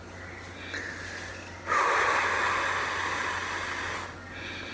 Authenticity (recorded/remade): recorded